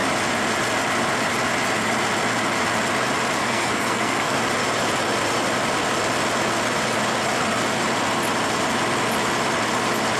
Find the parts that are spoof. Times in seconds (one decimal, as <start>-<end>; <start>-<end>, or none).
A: 3.4-4.4